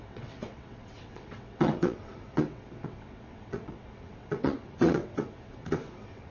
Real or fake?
fake